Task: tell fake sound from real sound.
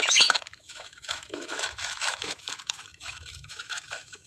fake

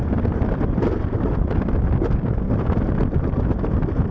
real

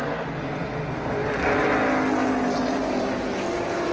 real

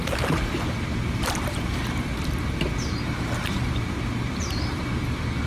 fake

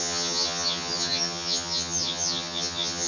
fake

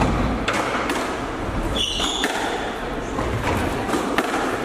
real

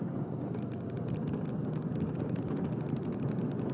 real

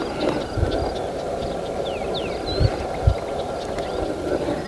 real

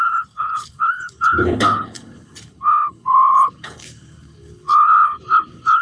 fake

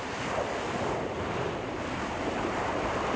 fake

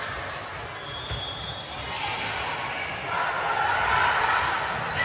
real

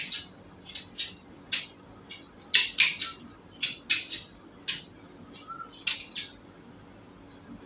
real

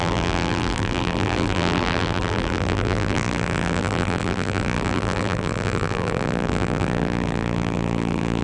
fake